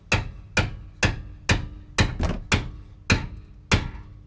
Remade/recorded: recorded